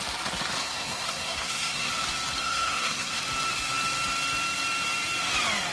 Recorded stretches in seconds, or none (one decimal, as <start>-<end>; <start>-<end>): 0.0-0.6; 1.9-2.4; 3.2-5.7